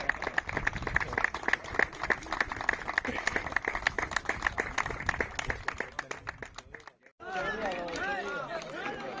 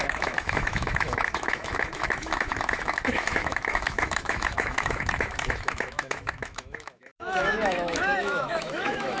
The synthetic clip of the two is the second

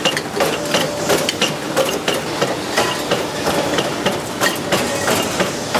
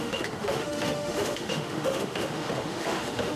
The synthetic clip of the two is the second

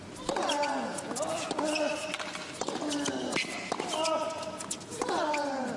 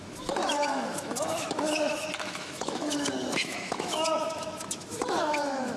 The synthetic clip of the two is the second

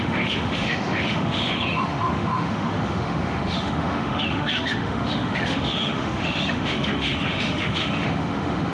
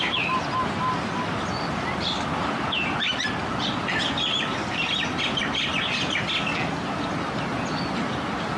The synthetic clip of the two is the first